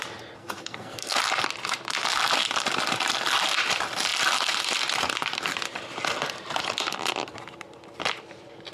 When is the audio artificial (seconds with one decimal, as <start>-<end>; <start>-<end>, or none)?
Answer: 0.4-1.2